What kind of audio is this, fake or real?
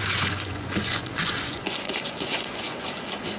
fake